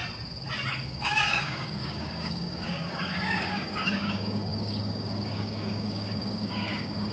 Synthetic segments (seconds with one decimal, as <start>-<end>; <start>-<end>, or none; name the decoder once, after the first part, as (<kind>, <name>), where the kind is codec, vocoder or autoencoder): 0.8-7.1 (codec, DAC)